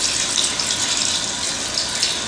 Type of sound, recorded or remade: recorded